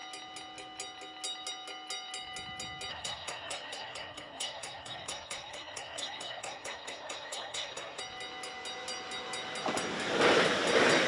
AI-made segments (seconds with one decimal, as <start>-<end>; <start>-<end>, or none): 2.9-8.0